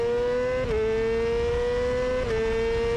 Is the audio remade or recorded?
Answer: recorded